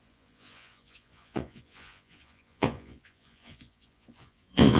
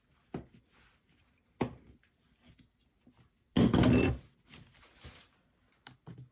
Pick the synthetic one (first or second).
first